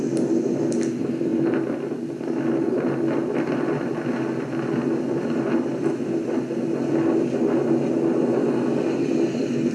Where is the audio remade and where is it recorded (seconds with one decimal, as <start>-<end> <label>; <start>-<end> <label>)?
0.0-9.7 recorded